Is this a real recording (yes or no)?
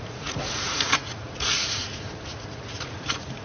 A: no